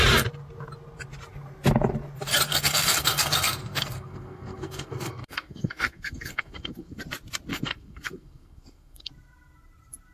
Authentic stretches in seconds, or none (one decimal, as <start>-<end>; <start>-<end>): 0.0-2.5; 7.0-7.5; 9.1-10.1